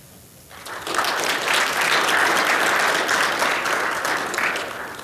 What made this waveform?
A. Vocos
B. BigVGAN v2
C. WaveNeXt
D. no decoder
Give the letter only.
D